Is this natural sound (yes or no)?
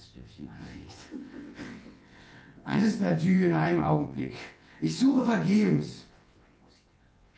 no